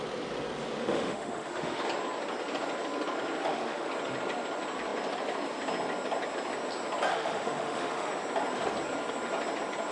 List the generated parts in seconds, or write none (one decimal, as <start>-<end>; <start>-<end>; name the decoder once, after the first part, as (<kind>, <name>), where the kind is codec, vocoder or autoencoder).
0.8-1.8 (autoencoder, DAC-VAE); 3.4-3.9; 7.1-8.1